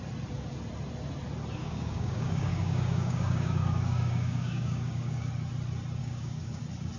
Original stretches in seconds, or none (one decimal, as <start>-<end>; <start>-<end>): 0.0-1.6; 5.3-6.0; 6.6-7.0